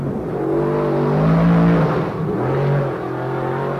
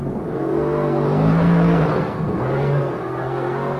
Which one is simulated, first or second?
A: second